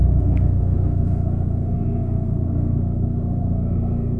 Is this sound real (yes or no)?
no